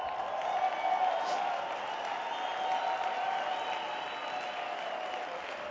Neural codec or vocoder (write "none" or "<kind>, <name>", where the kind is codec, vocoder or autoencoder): none